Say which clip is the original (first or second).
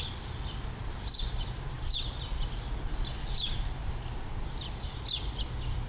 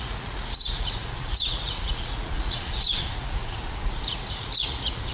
first